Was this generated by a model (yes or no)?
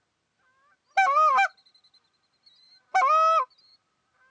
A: no